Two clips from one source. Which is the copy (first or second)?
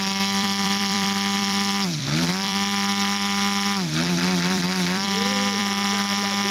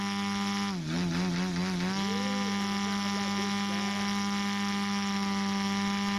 first